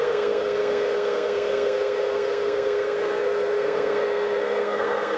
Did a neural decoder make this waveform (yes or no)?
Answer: yes